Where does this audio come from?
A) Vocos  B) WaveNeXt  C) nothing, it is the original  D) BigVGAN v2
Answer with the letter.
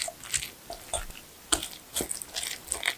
C